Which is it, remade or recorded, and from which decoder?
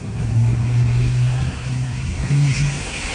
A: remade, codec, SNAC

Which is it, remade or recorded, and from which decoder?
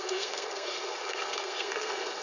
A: remade, codec, SNAC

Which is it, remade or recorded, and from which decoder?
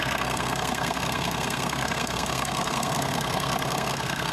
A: remade, codec, SNAC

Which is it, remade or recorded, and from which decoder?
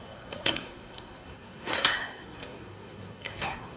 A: remade, codec, SNAC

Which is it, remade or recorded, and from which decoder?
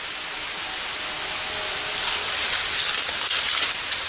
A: recorded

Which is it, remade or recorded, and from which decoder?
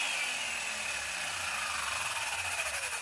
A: recorded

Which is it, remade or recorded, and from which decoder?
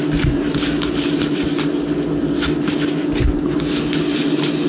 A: recorded